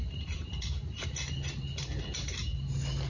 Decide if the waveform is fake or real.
real